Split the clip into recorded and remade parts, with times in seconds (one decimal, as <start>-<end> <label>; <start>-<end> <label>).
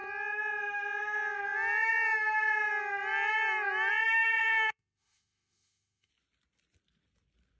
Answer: 0.0-4.4 recorded; 4.4-6.1 remade; 6.1-7.6 recorded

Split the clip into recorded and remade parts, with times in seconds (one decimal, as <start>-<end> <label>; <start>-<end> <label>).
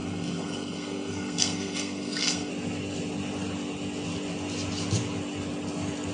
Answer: 0.0-2.5 remade; 2.5-6.1 recorded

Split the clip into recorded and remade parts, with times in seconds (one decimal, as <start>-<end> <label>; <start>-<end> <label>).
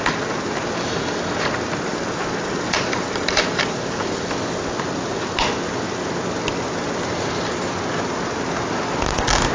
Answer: 0.0-1.9 recorded; 1.9-4.3 remade; 4.3-9.5 recorded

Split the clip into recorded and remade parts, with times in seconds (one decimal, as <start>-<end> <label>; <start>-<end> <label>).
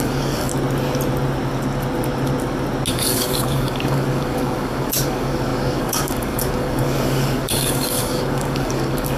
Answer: 0.0-0.5 remade; 0.5-2.9 recorded; 2.9-9.2 remade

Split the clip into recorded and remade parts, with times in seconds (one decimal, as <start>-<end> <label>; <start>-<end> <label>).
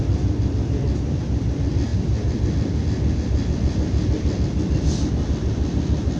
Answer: 0.0-6.2 recorded